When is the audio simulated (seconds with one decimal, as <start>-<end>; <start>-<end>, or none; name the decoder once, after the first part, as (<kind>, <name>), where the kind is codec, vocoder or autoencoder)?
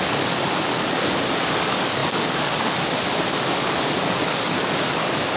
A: 0.0-5.4 (codec, DAC)